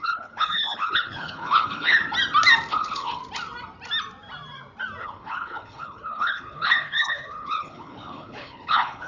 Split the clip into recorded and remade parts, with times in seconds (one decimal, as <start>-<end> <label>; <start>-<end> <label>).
0.0-2.0 remade; 2.0-2.7 recorded; 2.7-3.2 remade; 3.2-5.0 recorded; 5.0-9.1 remade